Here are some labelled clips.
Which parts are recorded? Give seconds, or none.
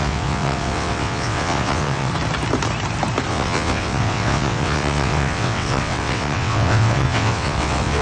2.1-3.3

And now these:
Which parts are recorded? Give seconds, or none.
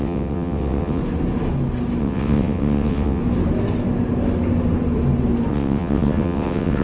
1.0-2.0; 3.2-5.5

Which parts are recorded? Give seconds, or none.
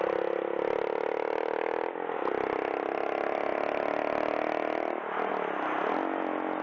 0.0-6.6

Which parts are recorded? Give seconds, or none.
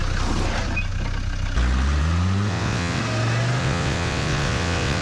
0.0-2.5; 3.0-3.6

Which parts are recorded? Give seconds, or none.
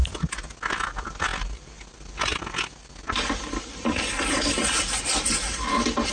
0.0-6.1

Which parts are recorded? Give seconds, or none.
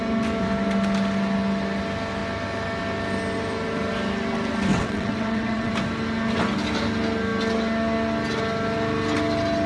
0.0-4.7; 5.7-9.7